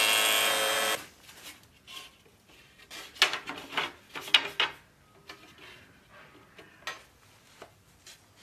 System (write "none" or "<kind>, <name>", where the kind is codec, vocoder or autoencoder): none